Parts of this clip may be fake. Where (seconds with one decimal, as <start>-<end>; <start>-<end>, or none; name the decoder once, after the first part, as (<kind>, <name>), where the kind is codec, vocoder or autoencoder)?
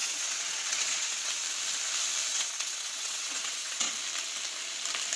0.0-1.3 (vocoder, WaveNeXt); 2.3-3.9